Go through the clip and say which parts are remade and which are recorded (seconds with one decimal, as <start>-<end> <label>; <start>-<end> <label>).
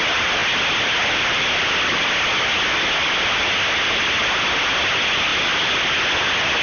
0.0-6.6 recorded